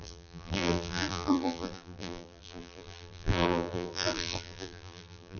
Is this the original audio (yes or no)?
no